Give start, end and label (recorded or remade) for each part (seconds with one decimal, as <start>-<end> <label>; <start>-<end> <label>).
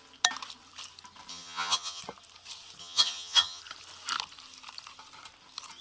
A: 0.0-1.3 recorded; 1.3-2.0 remade; 2.0-2.8 recorded; 2.8-3.6 remade; 3.6-5.8 recorded